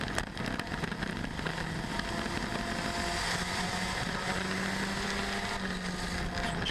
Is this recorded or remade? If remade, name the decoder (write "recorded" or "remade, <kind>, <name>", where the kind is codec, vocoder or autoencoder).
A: recorded